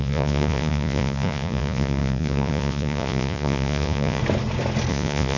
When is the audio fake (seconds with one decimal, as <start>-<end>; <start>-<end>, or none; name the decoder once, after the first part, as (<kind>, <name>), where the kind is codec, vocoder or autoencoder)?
0.0-4.2 (vocoder, Vocos); 4.9-5.4